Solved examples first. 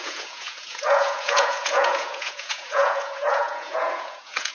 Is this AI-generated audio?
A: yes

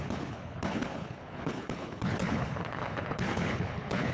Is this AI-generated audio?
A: yes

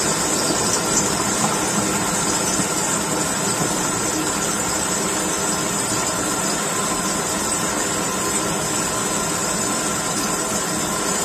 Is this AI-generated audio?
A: no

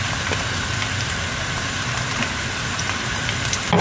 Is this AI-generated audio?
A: no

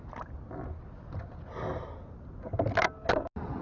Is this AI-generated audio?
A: no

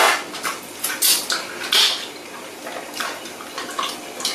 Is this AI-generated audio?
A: no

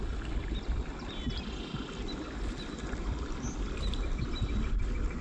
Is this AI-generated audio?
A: no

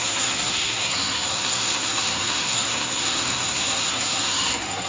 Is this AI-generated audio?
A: yes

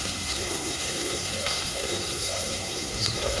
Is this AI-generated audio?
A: yes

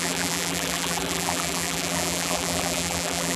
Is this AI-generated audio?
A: yes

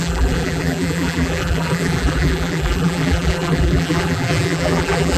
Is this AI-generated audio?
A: yes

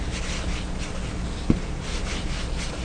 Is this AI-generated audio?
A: no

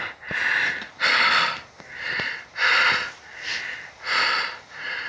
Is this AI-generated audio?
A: no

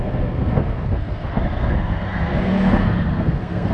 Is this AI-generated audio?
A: yes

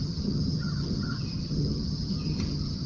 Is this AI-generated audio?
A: yes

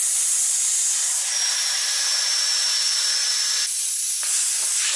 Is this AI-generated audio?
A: no